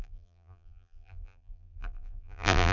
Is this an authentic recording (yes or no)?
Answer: no